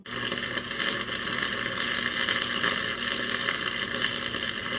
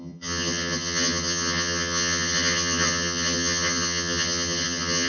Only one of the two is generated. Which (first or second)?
second